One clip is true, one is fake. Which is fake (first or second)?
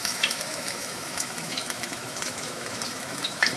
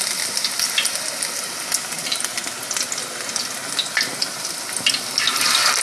first